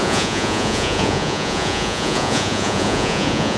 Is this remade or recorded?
remade